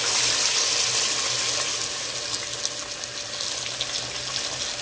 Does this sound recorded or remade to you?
recorded